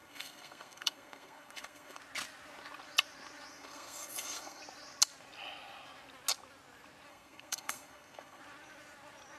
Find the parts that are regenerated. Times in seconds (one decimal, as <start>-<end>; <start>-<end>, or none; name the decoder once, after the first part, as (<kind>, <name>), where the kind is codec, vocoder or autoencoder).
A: 0.0-2.0 (codec, SNAC); 3.5-4.6; 7.1-8.4